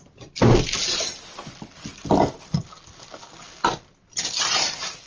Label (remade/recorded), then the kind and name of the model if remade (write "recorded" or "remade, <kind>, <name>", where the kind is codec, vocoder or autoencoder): recorded